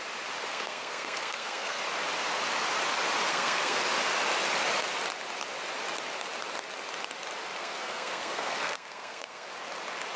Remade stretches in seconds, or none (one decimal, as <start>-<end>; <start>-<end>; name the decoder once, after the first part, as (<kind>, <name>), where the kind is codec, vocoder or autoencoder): 0.5-1.8 (codec, SNAC); 3.3-3.8; 7.6-9.5